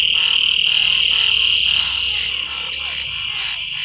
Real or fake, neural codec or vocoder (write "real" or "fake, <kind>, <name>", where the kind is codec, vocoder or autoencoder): real